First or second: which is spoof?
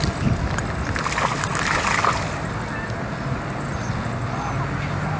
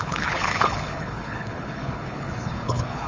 second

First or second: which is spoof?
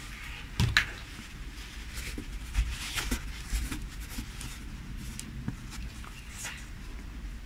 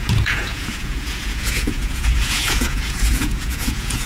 second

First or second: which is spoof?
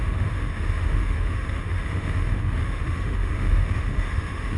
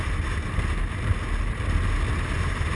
first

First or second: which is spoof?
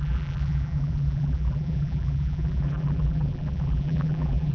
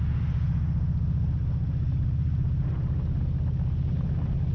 first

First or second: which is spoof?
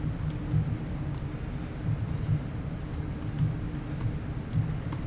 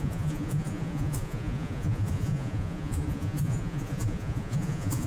second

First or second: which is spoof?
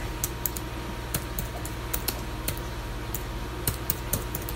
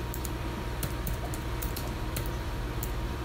second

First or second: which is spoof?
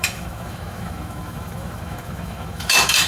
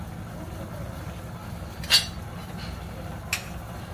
first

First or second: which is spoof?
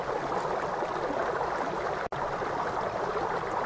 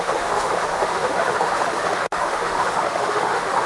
second